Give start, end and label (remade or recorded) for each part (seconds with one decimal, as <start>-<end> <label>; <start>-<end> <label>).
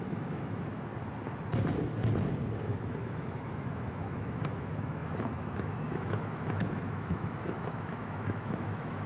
0.0-0.9 remade; 0.9-2.6 recorded; 2.6-9.1 remade